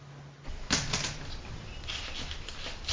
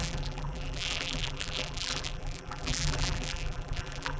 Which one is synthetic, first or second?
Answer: second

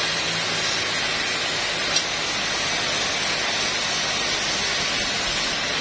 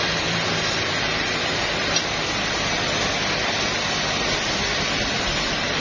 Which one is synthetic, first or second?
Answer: second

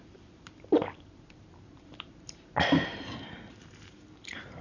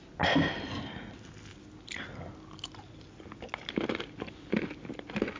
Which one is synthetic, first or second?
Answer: first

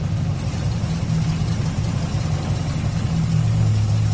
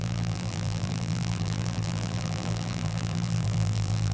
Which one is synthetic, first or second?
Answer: second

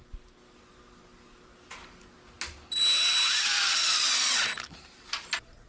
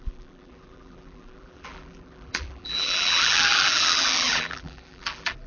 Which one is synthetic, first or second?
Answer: second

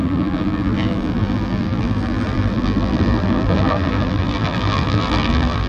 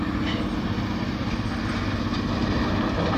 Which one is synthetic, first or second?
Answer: first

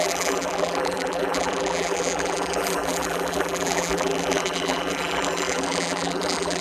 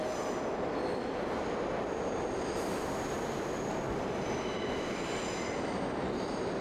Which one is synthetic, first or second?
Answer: first